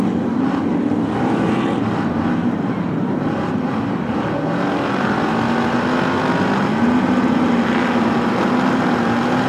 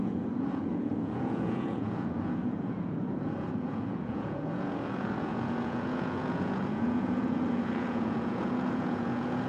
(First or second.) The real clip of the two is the first